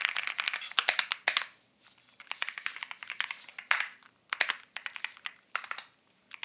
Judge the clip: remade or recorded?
recorded